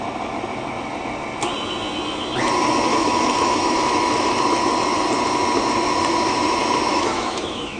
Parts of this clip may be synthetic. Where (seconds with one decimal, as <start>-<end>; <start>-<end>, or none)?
2.9-4.3; 6.9-7.8